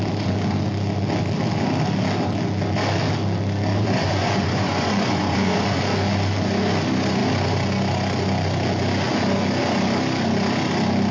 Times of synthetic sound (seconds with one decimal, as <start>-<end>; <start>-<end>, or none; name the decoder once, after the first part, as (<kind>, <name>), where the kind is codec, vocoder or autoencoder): 3.7-5.8 (vocoder, Vocos)